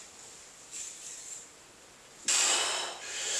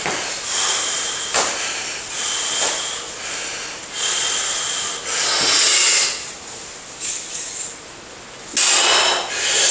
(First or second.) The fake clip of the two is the first